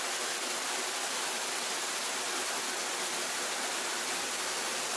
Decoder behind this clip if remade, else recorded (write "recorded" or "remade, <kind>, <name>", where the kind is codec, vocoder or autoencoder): recorded